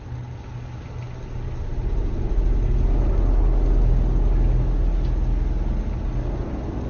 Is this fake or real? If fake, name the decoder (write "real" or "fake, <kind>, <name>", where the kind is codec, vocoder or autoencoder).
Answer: real